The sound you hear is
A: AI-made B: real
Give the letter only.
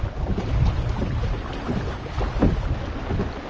B